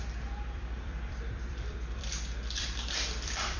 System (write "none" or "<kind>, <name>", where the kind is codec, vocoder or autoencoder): vocoder, BigVGAN v2